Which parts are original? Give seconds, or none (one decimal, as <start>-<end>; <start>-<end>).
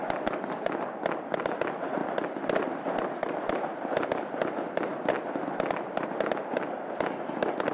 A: 0.0-2.0; 4.1-7.7